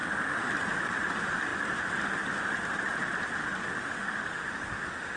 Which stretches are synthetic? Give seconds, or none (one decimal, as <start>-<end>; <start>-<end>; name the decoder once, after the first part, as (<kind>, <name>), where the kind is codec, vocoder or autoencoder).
0.0-0.5 (autoencoder, DAC-VAE); 3.7-5.2